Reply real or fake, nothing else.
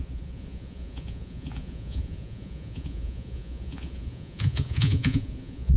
fake